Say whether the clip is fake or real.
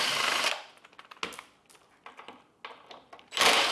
real